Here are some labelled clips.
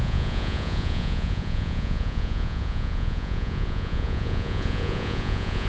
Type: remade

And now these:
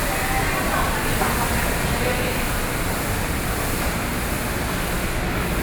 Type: recorded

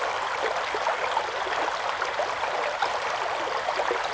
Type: recorded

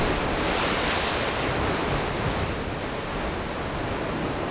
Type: recorded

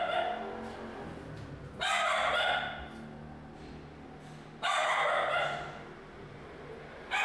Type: recorded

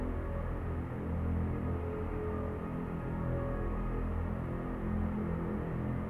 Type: recorded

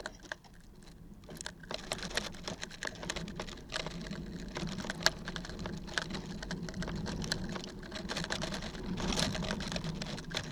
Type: recorded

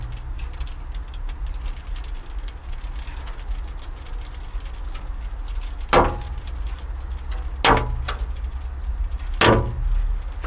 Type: recorded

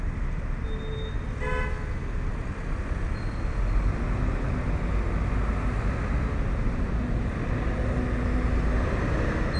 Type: recorded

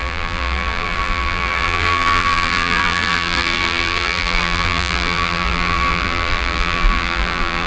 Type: remade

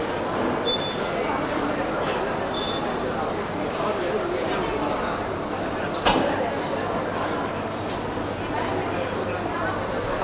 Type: recorded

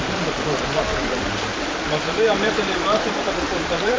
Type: remade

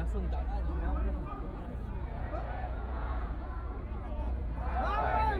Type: remade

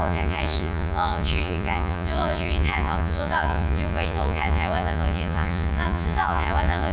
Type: remade